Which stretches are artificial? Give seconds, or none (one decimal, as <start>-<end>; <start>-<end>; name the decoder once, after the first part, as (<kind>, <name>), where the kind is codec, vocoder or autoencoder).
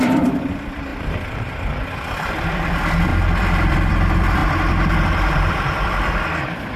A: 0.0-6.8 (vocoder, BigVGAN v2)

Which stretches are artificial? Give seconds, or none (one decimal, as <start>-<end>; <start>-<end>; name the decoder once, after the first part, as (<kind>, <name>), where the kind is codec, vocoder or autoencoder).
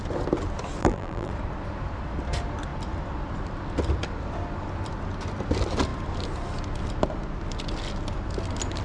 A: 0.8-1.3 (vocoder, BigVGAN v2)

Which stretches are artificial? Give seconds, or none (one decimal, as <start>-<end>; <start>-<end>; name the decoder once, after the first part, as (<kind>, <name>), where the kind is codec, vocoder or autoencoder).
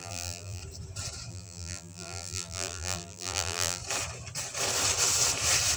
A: 0.0-0.6 (vocoder, BigVGAN v2); 1.3-3.8